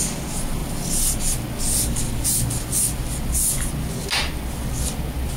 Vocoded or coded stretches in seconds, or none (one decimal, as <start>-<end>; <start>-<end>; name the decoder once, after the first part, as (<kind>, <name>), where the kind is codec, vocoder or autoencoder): none